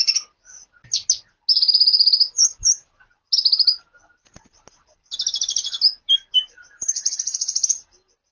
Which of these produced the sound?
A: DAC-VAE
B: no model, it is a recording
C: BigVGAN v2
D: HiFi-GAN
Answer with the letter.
B